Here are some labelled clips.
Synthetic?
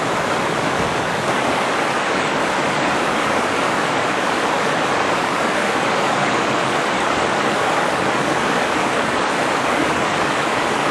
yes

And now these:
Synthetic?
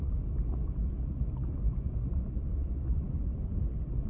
no